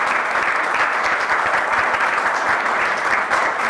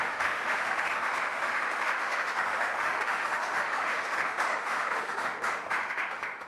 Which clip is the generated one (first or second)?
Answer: second